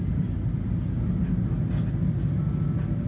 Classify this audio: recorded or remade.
recorded